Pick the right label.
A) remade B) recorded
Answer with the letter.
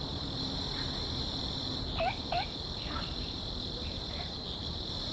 A